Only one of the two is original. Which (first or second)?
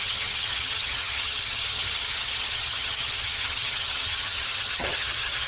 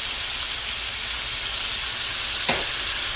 second